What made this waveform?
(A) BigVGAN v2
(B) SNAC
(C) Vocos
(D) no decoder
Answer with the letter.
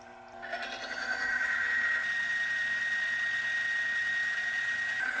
D